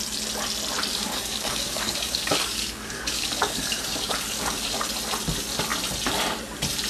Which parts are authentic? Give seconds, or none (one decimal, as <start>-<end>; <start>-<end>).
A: 0.0-0.9; 4.8-6.9